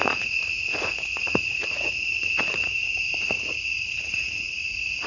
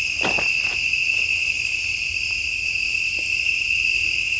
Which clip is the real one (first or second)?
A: second